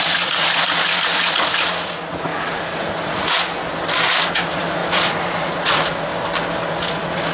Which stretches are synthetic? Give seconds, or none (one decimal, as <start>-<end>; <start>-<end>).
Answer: 0.0-3.6; 4.2-6.1; 6.7-7.3